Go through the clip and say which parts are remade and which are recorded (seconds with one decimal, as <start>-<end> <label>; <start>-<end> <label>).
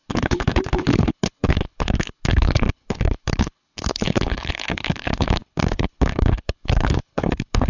0.0-7.7 remade